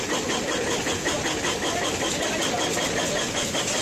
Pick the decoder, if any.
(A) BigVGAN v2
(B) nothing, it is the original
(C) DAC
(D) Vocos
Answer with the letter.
B